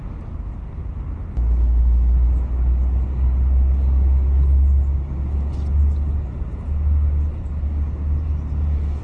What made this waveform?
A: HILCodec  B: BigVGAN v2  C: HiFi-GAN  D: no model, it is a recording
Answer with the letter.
D